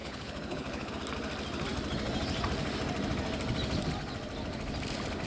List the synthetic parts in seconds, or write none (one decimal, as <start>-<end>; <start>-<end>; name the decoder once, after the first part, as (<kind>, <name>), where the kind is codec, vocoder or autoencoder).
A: 0.0-0.9 (codec, HILCodec)